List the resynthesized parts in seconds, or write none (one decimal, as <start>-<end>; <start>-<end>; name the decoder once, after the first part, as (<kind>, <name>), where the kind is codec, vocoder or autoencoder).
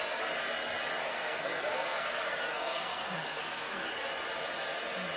1.0-4.1 (codec, SNAC)